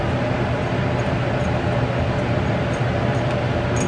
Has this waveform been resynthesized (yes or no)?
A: no